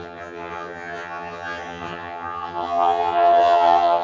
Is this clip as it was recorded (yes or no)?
no